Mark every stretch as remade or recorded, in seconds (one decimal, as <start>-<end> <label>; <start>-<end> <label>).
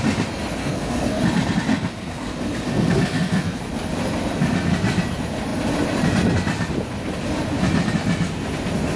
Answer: 0.0-0.6 recorded; 0.6-1.2 remade; 1.2-1.7 recorded; 1.7-3.6 remade; 3.6-9.0 recorded